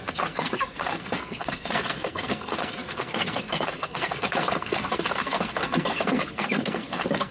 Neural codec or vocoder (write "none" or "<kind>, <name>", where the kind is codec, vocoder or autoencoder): codec, SNAC